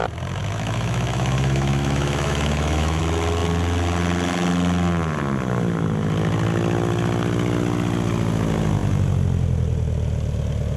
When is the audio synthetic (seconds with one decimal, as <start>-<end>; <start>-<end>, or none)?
0.4-3.0